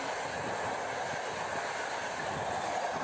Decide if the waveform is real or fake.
real